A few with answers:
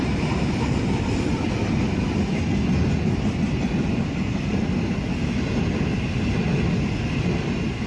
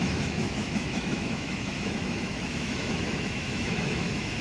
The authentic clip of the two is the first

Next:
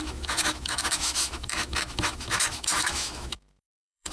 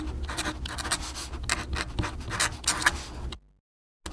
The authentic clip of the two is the second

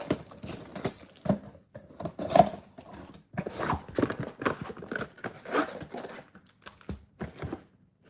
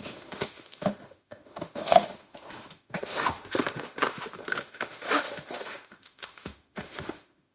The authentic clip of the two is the first